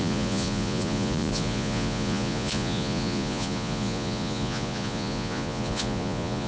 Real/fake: fake